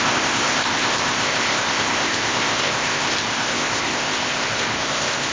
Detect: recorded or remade remade